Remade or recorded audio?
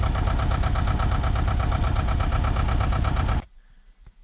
recorded